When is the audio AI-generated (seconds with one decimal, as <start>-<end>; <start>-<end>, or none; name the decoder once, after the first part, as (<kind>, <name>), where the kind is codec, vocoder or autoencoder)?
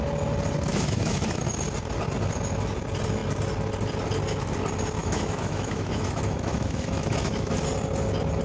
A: 0.7-1.4 (autoencoder, DAC-VAE); 5.0-7.5